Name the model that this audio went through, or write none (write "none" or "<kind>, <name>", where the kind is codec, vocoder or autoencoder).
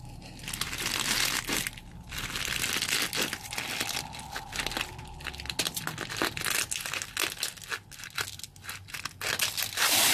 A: none